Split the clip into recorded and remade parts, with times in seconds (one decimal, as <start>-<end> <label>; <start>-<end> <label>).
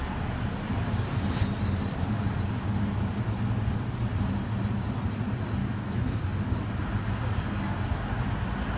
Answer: 0.0-5.6 recorded; 5.6-6.2 remade; 6.2-8.8 recorded